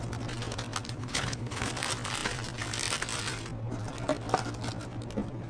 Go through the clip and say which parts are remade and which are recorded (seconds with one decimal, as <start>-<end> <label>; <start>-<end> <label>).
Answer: 0.0-1.0 recorded; 1.0-1.7 remade; 1.7-5.5 recorded